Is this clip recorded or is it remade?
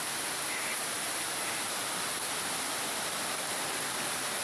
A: recorded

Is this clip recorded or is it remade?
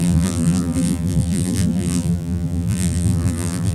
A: remade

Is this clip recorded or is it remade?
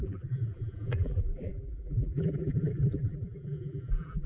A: remade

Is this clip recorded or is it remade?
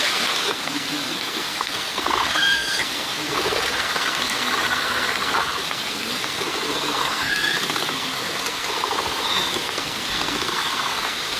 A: remade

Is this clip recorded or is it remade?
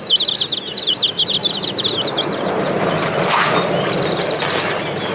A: recorded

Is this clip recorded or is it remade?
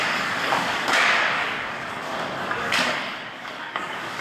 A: remade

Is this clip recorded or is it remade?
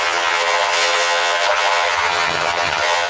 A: remade